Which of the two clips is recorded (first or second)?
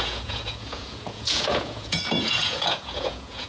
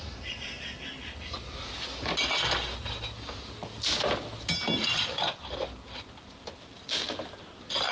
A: second